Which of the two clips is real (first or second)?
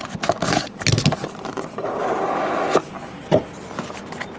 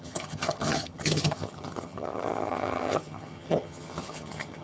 first